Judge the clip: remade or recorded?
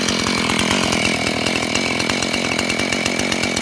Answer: recorded